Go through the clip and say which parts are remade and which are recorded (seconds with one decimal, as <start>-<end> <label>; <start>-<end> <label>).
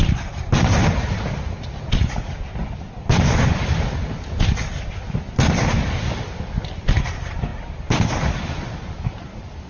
0.0-9.7 recorded